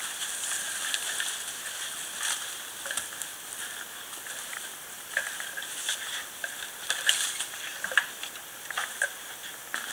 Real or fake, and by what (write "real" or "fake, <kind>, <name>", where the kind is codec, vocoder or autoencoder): real